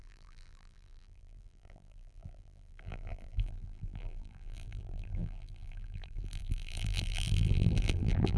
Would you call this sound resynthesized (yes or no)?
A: yes